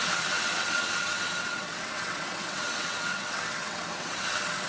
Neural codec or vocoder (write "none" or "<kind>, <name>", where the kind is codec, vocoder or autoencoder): vocoder, WaveNeXt